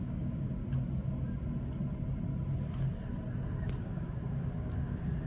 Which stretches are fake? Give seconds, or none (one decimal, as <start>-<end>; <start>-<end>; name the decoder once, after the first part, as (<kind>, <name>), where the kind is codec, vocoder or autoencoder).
0.0-0.6 (codec, DAC); 3.8-5.3